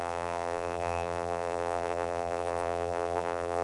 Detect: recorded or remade remade